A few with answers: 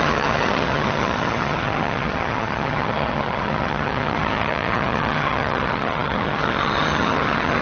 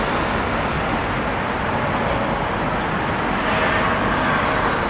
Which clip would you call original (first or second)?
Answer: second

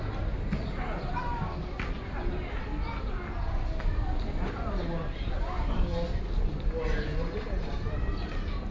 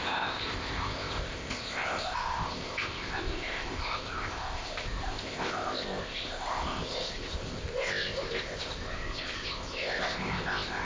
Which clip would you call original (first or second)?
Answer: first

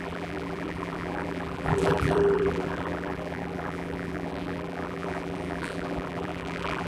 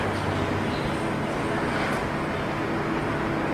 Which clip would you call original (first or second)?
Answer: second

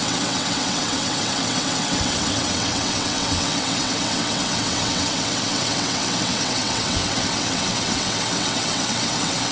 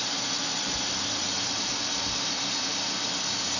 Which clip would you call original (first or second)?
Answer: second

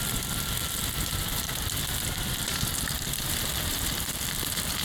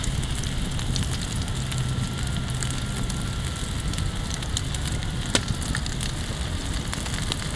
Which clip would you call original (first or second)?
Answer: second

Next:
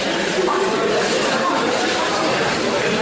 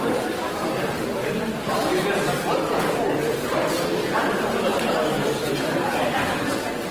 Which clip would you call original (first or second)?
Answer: second